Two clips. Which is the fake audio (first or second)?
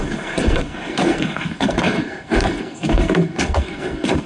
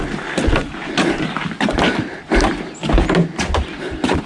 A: first